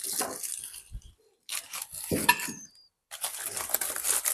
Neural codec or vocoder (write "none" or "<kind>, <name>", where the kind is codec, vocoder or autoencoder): none